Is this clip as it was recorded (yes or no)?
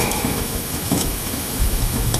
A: no